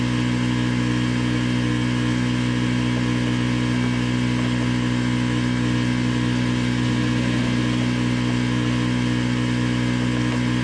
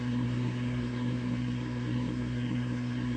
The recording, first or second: first